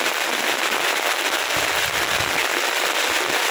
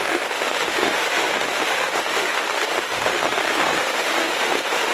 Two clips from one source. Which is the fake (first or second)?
second